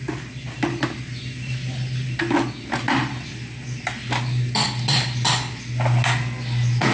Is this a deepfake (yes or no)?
no